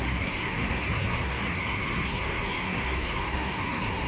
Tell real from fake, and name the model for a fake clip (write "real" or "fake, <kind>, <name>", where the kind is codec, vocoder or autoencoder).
fake, codec, SNAC